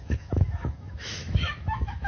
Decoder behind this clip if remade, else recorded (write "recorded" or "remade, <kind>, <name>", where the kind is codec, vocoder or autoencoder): remade, autoencoder, DAC-VAE